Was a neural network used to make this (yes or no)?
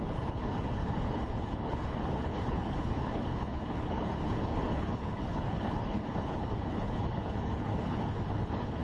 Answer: yes